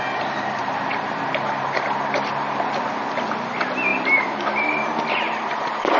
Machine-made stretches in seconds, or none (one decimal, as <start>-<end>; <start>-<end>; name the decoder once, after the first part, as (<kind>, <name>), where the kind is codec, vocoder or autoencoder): 0.6-2.8 (vocoder, BigVGAN v2); 3.9-5.5